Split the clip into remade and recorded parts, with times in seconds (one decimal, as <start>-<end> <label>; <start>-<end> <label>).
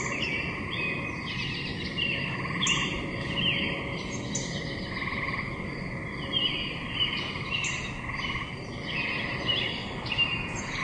0.0-9.8 recorded; 9.8-10.8 remade